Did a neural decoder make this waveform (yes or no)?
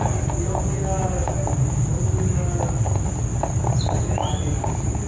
no